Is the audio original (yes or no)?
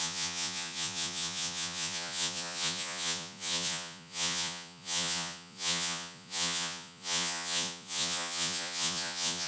no